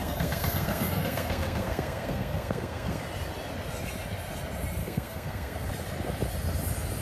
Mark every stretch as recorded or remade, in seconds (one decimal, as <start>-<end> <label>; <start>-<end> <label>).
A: 0.0-3.0 remade; 3.0-4.8 recorded; 4.8-5.7 remade; 5.7-7.0 recorded

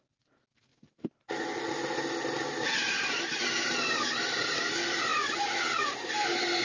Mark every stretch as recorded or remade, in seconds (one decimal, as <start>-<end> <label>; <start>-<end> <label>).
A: 0.0-6.6 recorded

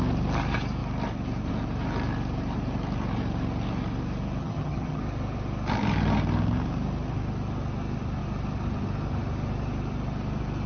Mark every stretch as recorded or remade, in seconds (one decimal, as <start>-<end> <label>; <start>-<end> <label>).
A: 0.0-4.4 recorded; 4.4-5.0 remade; 5.0-10.7 recorded

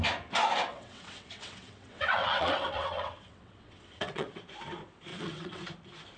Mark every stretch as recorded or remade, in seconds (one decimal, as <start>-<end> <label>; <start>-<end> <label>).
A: 0.0-0.7 recorded; 0.7-4.4 remade; 4.4-5.1 recorded; 5.1-5.6 remade; 5.6-6.2 recorded

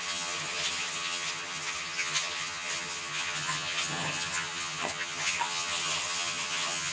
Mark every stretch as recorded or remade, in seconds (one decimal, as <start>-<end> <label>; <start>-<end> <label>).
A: 0.0-6.9 remade